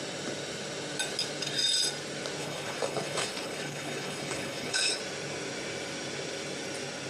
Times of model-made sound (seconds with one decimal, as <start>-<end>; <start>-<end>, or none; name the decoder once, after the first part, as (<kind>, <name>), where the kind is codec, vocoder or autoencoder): 2.4-5.0 (codec, HILCodec)